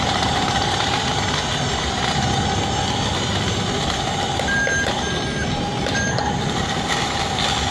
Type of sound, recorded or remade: remade